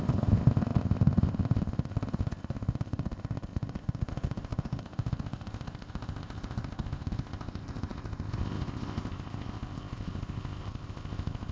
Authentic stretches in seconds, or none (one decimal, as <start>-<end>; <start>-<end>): none